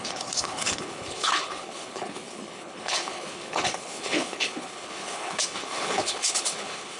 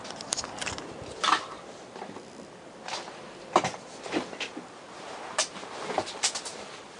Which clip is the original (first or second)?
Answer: second